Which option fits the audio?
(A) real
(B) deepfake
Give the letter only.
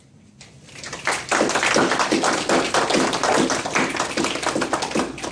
A